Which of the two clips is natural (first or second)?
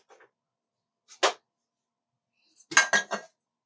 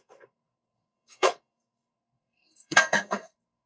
first